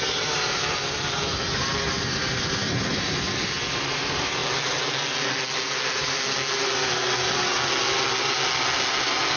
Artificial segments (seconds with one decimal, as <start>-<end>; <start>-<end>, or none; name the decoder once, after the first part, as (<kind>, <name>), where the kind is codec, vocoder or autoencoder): 0.0-4.4 (vocoder, BigVGAN v2)